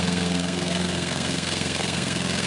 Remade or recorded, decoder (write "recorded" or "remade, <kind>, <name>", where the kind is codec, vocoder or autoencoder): remade, codec, SNAC